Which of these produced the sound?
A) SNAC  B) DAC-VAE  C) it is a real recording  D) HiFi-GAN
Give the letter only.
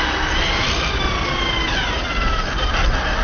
C